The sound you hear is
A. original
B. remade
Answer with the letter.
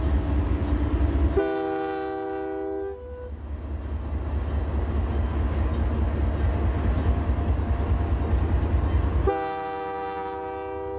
A